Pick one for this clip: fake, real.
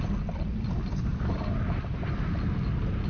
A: real